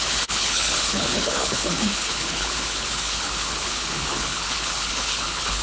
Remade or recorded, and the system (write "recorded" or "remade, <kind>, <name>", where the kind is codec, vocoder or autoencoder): remade, codec, HILCodec